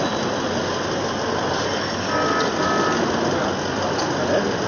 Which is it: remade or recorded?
recorded